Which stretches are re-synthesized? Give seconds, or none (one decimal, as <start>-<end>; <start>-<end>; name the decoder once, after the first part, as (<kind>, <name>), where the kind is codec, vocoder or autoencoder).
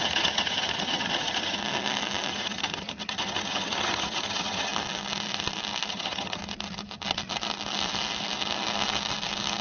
0.0-1.6 (vocoder, HiFi-GAN); 2.3-4.7; 5.9-6.4